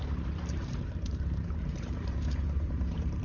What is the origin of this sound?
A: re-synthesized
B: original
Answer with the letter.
A